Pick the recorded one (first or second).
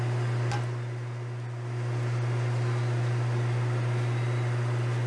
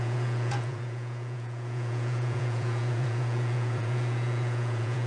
first